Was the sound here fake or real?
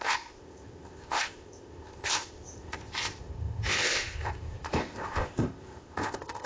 fake